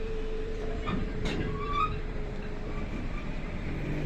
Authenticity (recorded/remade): remade